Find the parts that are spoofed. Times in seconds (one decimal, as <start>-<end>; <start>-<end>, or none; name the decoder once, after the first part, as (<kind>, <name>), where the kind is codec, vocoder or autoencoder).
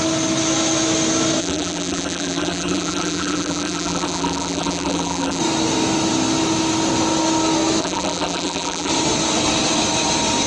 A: 1.4-5.4 (vocoder, BigVGAN v2); 7.8-8.9